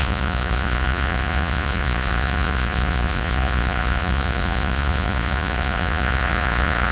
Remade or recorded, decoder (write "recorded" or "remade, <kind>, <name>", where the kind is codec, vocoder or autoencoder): remade, vocoder, Vocos